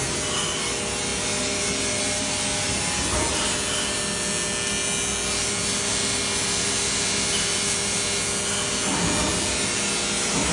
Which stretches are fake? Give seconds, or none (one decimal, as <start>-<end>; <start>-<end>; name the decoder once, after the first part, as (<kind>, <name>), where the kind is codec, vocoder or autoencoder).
none